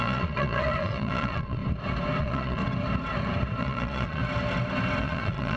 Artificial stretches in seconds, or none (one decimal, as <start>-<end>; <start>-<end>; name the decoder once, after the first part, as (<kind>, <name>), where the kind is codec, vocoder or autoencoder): 0.0-1.6 (vocoder, Vocos); 2.2-2.6; 3.6-4.2; 5.0-5.6